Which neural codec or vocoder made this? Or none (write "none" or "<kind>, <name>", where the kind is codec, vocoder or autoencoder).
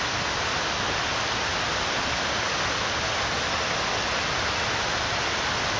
none